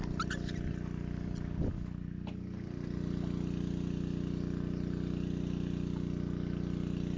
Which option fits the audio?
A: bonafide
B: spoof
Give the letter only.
A